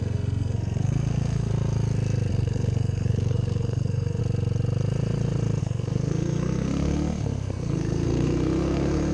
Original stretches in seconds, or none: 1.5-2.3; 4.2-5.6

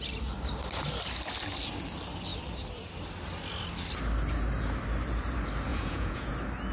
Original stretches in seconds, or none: 0.0-5.7; 6.3-6.7

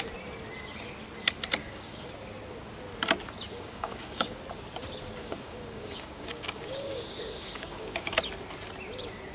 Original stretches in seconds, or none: 0.0-1.6; 2.1-3.5; 4.4-5.2; 8.2-9.3